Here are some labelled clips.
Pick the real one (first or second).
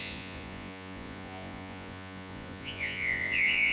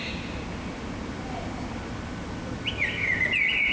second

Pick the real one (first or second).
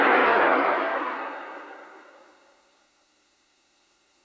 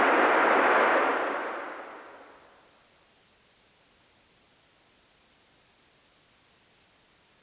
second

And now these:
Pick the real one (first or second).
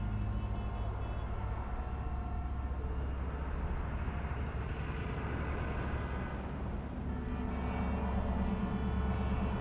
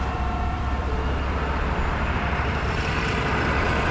first